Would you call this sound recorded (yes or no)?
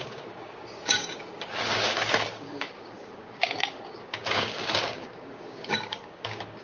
no